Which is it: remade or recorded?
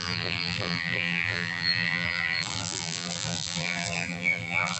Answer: remade